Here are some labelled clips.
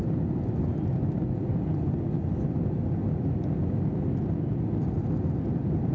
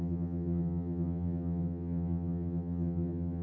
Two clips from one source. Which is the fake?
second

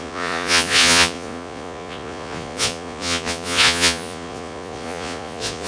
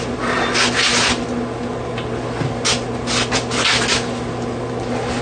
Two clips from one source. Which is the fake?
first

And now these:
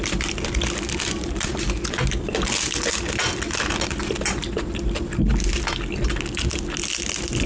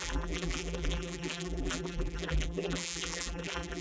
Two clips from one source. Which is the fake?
second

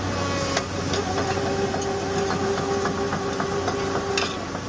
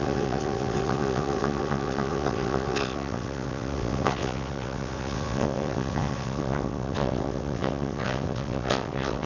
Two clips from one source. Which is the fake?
second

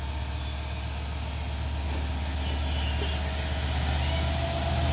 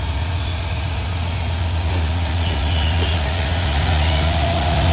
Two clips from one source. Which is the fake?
second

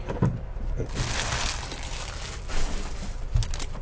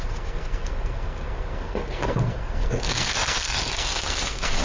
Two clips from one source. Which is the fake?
second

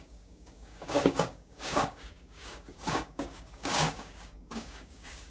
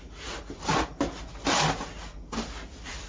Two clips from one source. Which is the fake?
first